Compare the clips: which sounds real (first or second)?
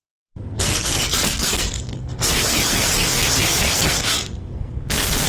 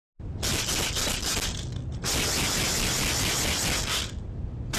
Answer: second